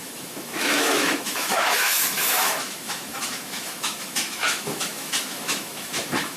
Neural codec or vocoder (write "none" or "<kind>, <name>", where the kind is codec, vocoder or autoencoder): autoencoder, DAC-VAE